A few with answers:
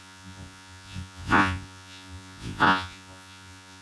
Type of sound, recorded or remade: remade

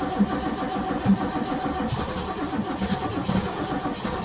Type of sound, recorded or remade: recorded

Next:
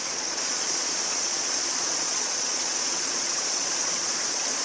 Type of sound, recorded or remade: remade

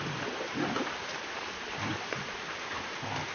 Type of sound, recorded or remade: recorded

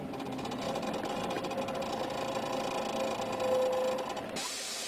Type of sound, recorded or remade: recorded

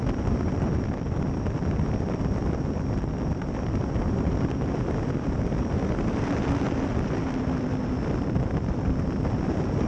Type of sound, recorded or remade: remade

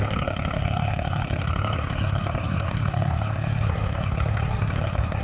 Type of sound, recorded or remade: remade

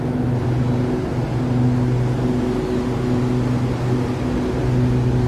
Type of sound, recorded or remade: recorded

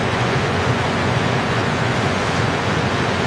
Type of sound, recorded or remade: remade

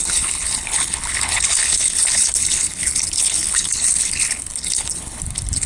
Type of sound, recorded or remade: remade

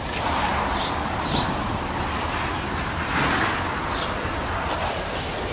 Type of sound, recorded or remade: recorded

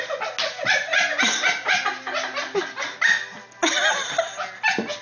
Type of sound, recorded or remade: recorded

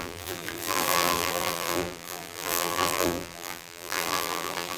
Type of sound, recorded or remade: remade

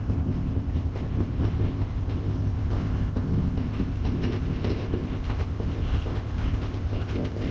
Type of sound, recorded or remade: remade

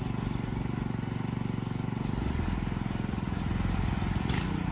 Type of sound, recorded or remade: recorded